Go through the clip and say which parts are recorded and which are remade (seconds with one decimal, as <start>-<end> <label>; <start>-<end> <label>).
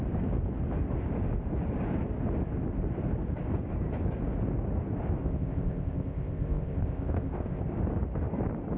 0.0-5.2 recorded; 5.2-7.6 remade; 7.6-8.8 recorded